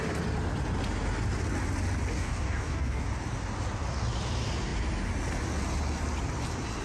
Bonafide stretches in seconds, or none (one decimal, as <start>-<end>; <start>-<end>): 0.0-2.1; 3.0-6.8